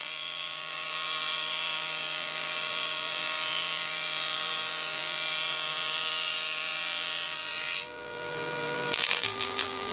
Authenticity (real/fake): fake